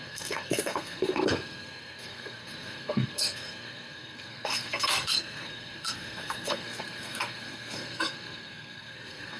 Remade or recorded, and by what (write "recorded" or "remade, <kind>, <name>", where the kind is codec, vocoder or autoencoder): remade, codec, SNAC